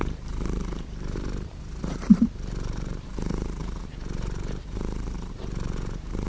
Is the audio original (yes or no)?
no